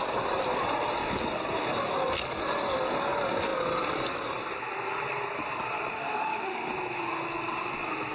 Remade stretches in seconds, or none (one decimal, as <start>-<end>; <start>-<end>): 5.9-6.7

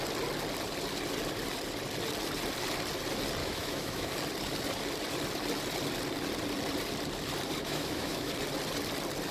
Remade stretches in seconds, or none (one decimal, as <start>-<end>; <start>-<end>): 3.4-4.1; 7.6-8.3

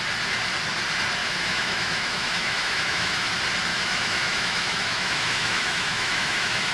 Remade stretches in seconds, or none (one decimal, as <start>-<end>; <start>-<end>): 1.2-3.3; 3.7-6.7